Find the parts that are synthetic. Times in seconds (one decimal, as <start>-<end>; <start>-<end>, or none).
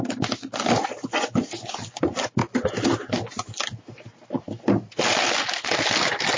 none